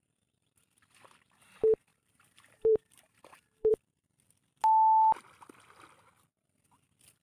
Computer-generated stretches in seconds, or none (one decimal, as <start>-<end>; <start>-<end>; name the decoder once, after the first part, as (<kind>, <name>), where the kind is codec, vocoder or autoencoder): 1.9-3.7 (vocoder, BigVGAN v2)